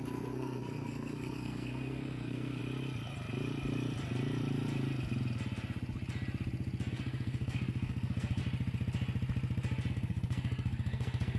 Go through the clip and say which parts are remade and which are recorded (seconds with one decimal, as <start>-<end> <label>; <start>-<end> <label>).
0.0-2.6 remade; 2.6-6.9 recorded; 6.9-8.4 remade; 8.4-9.9 recorded; 9.9-11.4 remade